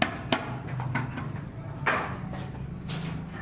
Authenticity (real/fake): real